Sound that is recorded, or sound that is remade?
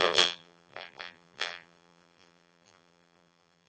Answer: remade